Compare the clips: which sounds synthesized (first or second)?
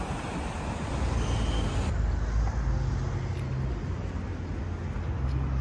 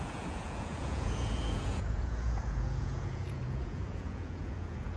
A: second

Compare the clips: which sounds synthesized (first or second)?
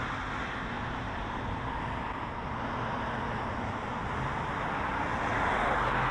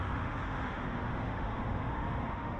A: second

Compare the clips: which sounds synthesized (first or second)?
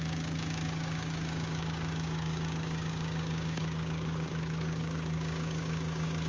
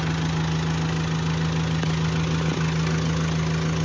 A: first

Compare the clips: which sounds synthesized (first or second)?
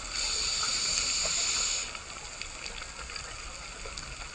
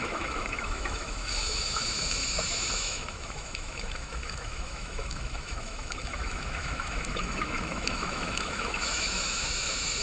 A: second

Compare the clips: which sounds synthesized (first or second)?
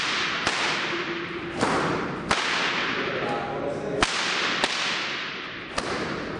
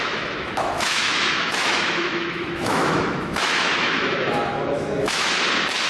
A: second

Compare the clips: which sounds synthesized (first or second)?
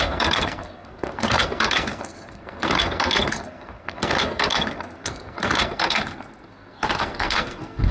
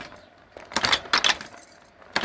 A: first